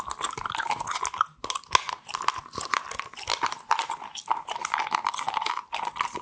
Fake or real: real